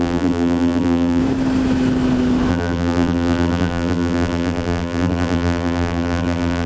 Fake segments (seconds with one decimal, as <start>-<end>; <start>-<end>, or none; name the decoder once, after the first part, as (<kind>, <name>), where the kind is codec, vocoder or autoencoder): 0.0-1.2 (vocoder, BigVGAN v2); 2.5-6.7